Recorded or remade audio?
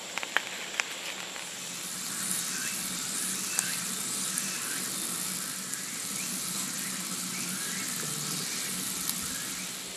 recorded